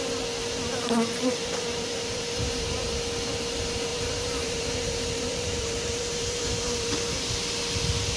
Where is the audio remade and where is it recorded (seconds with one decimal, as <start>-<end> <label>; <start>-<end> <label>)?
0.0-0.4 recorded; 0.4-3.0 remade; 3.0-3.9 recorded; 3.9-6.9 remade; 6.9-8.2 recorded